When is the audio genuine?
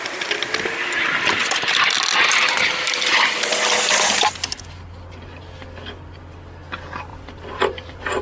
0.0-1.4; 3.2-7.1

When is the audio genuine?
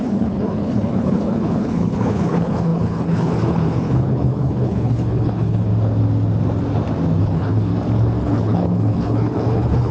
5.7-7.2; 7.7-8.2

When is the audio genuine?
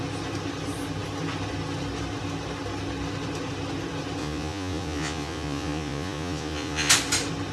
0.0-4.2; 6.9-7.5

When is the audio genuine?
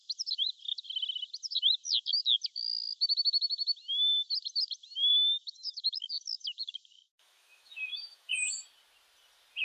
0.0-5.1; 8.3-9.6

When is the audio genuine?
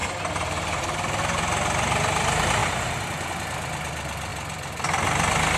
0.0-2.6; 3.3-5.6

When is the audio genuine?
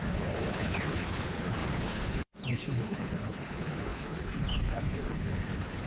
none